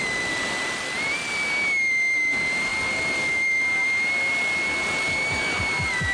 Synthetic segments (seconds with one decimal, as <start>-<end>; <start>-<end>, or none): none